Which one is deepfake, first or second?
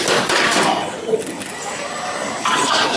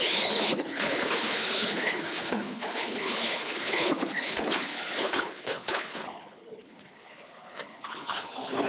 second